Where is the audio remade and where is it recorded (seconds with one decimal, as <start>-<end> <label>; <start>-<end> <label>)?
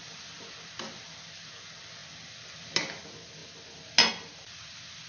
0.0-5.1 recorded